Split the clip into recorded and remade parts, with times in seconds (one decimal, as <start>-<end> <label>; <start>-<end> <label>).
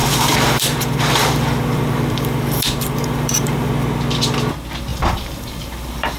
0.0-3.7 remade; 3.7-4.9 recorded; 4.9-6.2 remade